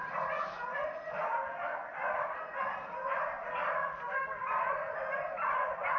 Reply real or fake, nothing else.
real